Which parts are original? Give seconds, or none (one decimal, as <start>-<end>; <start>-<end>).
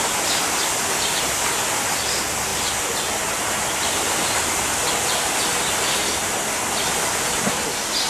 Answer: 0.0-8.1